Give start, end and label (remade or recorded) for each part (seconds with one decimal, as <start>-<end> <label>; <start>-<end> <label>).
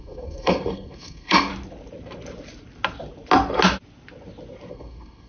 0.0-1.5 remade; 1.5-4.7 recorded; 4.7-5.3 remade